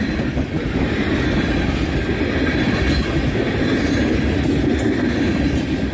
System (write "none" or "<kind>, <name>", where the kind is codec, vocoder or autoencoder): none